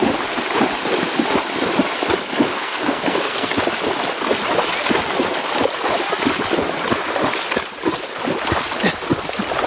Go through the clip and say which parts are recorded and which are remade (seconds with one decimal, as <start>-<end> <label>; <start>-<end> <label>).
0.0-2.5 recorded; 2.5-3.5 remade; 3.5-9.7 recorded